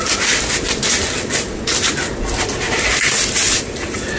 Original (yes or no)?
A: yes